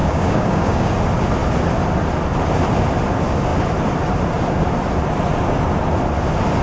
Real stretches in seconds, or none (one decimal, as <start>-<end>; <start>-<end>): 0.9-6.6